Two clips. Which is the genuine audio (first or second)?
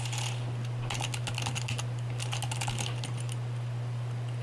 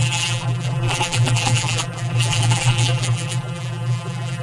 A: first